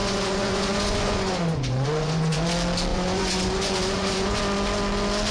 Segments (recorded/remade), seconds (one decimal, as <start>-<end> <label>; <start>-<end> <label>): 0.0-2.5 remade; 2.5-2.9 recorded; 2.9-4.4 remade; 4.4-5.3 recorded